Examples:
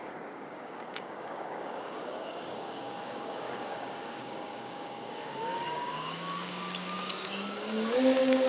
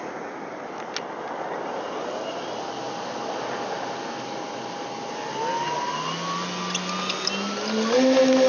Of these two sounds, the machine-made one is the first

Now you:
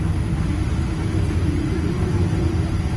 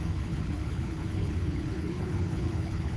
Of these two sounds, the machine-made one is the second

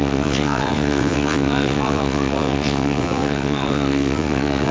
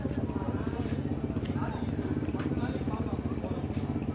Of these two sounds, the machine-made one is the first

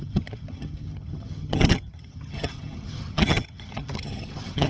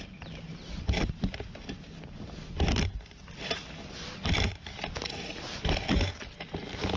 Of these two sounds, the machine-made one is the first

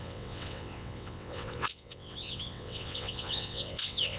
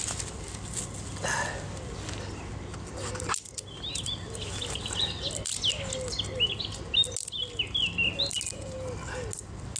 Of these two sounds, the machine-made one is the first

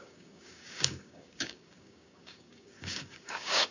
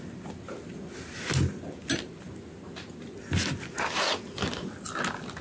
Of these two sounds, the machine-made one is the first